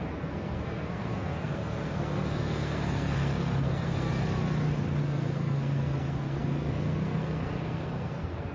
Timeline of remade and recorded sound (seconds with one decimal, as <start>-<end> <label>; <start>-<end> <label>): 0.0-4.1 remade; 4.1-5.0 recorded; 5.0-8.5 remade